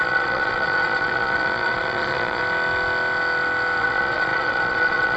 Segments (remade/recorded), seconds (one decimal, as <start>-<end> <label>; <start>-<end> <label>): 0.0-2.4 remade; 2.4-3.8 recorded; 3.8-5.2 remade